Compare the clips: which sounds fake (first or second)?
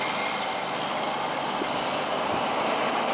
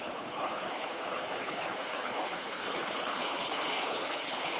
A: second